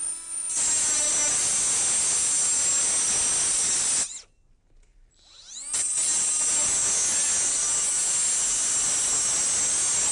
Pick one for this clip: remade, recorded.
recorded